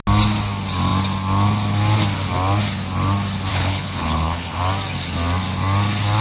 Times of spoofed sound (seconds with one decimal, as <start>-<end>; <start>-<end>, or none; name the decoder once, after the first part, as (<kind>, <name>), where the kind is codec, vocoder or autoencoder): 3.5-4.6 (codec, HILCodec)